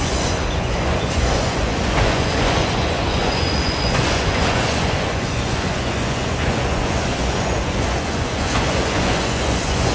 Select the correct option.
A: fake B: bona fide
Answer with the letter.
A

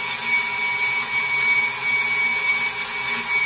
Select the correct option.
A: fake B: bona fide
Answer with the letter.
B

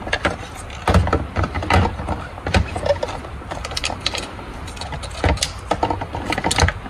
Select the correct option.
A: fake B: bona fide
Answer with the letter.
B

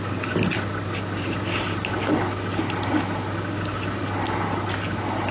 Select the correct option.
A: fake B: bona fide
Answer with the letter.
B